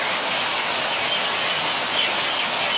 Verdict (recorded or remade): recorded